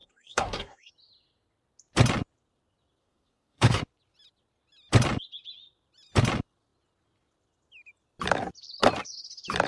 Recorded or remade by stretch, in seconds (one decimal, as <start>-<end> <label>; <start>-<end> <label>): 0.0-0.9 remade; 0.9-3.0 recorded; 3.0-3.8 remade; 3.8-9.7 recorded